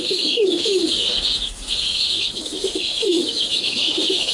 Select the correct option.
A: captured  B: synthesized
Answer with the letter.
B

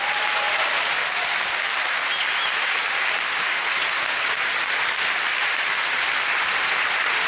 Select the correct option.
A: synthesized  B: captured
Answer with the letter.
A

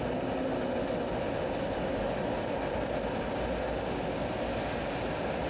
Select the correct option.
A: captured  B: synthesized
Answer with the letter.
A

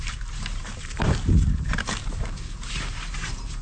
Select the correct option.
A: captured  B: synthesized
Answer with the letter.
B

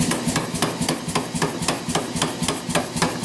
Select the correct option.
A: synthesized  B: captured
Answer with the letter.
B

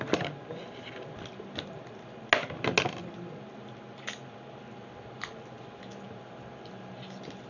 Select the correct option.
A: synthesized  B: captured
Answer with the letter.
B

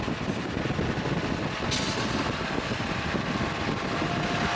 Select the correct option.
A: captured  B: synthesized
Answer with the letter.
A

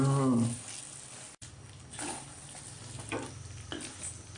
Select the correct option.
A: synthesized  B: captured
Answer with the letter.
B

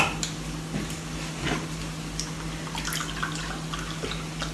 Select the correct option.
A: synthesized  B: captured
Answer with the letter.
B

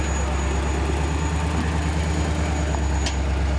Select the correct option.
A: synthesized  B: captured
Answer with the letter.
B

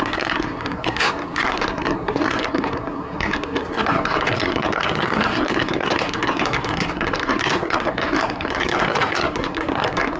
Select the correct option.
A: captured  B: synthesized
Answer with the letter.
B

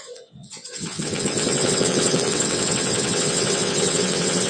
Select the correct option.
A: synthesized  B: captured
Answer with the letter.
A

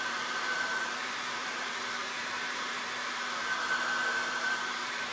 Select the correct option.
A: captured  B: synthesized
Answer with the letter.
B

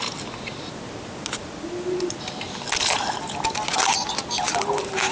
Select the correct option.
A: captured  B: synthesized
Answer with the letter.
A